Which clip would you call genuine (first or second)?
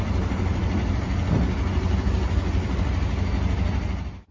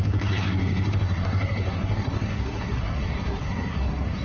first